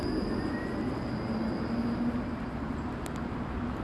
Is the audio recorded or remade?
recorded